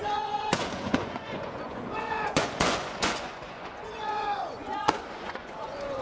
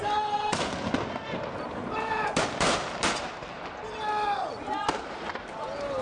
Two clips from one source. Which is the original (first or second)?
second